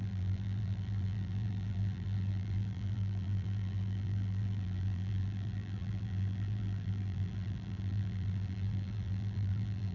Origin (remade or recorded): remade